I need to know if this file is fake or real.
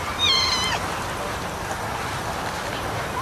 real